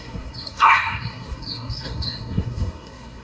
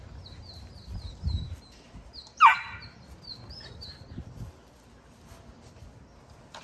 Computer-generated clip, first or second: first